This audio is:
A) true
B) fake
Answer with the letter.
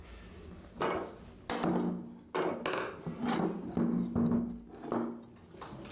A